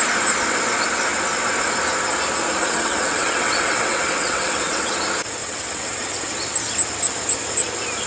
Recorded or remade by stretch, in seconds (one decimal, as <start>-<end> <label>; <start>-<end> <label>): 0.0-2.6 recorded; 2.6-4.9 remade; 4.9-5.4 recorded; 5.4-6.3 remade; 6.3-8.1 recorded